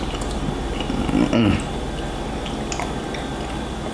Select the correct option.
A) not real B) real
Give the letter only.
B